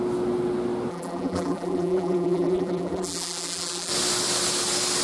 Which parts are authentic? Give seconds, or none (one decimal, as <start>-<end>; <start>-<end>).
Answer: 0.0-0.9; 3.9-5.0